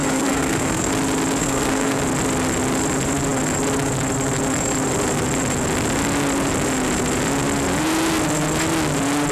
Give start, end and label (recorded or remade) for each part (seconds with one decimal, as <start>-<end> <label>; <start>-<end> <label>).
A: 0.0-0.9 remade; 0.9-1.4 recorded; 1.4-2.0 remade; 2.0-9.3 recorded